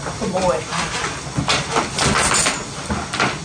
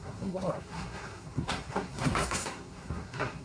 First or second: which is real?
first